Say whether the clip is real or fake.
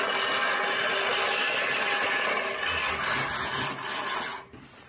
real